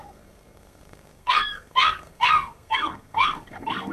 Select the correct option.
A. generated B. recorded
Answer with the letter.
A